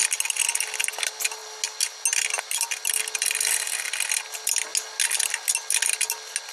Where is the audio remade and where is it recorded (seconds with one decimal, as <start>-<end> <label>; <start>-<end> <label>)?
0.0-6.5 recorded